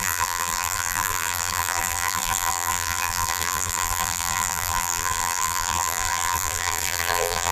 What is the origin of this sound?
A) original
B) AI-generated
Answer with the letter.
B